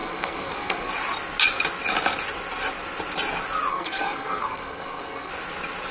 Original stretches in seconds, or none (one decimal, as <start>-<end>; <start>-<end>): 0.9-3.7; 5.3-5.9